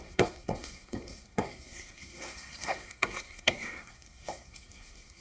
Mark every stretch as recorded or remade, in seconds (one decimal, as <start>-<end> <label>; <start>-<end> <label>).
0.0-5.2 remade